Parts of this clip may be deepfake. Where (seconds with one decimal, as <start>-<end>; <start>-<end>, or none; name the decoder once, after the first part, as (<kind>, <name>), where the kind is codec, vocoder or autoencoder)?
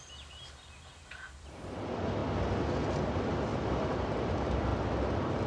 0.0-2.2 (vocoder, BigVGAN v2); 3.7-4.7